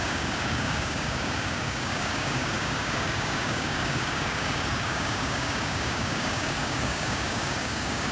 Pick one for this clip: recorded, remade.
remade